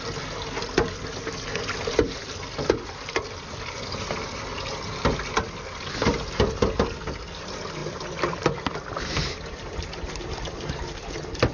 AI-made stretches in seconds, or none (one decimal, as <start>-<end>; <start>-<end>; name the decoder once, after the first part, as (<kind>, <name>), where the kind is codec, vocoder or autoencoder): none